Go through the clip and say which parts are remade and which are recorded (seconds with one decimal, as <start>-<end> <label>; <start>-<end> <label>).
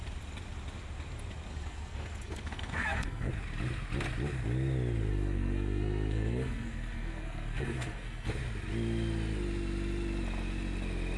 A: 0.0-1.5 recorded; 1.5-3.3 remade; 3.3-5.1 recorded; 5.1-8.3 remade; 8.3-11.2 recorded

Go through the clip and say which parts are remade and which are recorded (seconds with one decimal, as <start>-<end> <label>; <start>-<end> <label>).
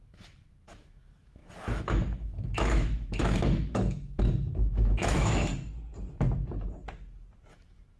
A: 0.0-5.5 remade; 5.5-7.5 recorded; 7.5-8.0 remade